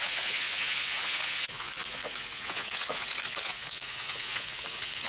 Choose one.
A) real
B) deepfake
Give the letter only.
B